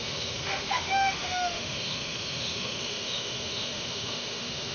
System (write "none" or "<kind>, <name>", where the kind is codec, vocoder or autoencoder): autoencoder, DAC-VAE